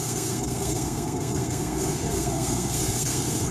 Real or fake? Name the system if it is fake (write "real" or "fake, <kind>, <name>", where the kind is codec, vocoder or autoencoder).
fake, codec, SNAC